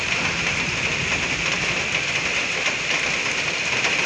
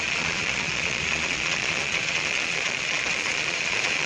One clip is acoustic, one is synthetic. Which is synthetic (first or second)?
second